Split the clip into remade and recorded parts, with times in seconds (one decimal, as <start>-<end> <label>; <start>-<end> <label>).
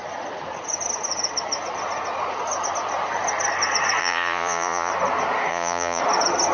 0.0-4.0 recorded; 4.0-4.9 remade; 4.9-5.5 recorded; 5.5-6.0 remade; 6.0-6.5 recorded